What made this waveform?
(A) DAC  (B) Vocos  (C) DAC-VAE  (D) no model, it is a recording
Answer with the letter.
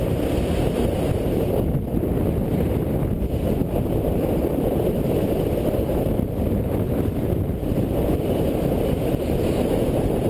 D